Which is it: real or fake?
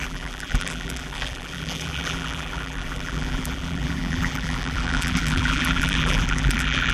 fake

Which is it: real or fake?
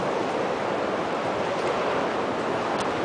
real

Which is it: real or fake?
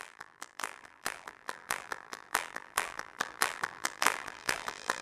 fake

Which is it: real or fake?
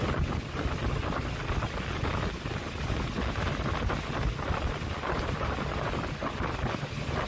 real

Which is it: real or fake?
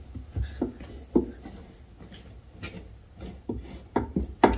real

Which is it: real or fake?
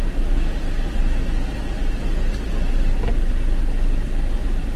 real